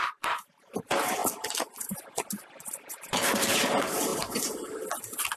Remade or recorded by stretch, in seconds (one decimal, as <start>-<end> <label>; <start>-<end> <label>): 0.0-1.2 remade; 1.2-2.9 recorded; 2.9-4.1 remade; 4.1-5.4 recorded

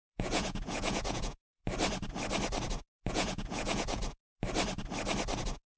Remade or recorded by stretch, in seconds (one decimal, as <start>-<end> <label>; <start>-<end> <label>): 0.0-1.6 remade; 1.6-3.1 recorded; 3.1-4.0 remade; 4.0-5.8 recorded

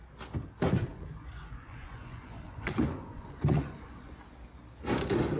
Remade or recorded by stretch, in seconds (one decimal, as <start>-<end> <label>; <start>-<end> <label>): 0.0-0.9 recorded; 0.9-4.1 remade; 4.1-5.4 recorded

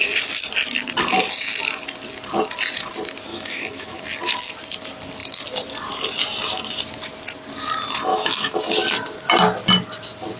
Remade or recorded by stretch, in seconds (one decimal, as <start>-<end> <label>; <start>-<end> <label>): 0.0-3.3 recorded; 3.3-4.0 remade; 4.0-8.1 recorded; 8.1-8.6 remade; 8.6-10.4 recorded

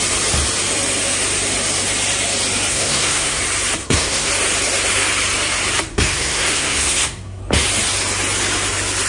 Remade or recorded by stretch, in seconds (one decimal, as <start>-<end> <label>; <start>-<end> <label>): 0.0-2.7 recorded; 2.7-3.4 remade; 3.4-3.8 recorded; 3.8-4.3 remade; 4.3-5.9 recorded; 5.9-7.4 remade; 7.4-9.1 recorded

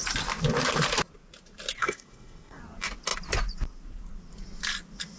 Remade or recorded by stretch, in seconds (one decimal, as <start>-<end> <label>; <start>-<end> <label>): 0.0-1.8 recorded; 1.8-2.6 remade; 2.6-5.2 recorded

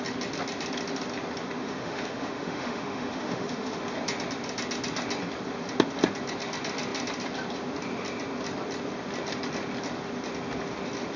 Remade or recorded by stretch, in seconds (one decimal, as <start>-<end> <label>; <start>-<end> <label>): 0.0-1.6 recorded; 1.6-3.8 remade; 3.8-11.2 recorded